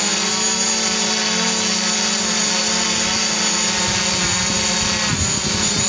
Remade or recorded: recorded